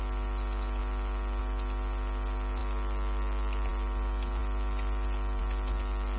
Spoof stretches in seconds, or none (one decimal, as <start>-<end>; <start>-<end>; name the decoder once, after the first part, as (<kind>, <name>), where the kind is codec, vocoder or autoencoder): none